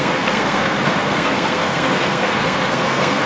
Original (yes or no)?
no